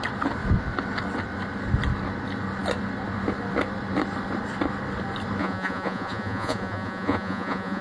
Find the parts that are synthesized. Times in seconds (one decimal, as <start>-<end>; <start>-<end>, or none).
5.4-7.8